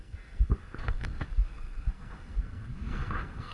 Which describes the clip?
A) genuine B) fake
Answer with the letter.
B